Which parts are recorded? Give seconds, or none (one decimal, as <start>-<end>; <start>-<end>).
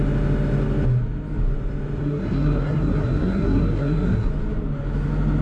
0.0-2.0; 4.3-5.4